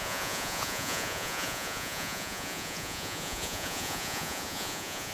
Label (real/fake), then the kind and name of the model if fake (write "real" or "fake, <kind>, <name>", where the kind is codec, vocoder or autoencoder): fake, vocoder, Vocos